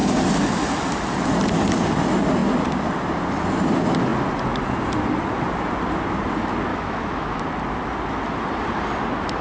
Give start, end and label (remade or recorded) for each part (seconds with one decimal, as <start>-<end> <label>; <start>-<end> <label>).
0.0-6.7 recorded; 6.7-7.4 remade; 7.4-9.4 recorded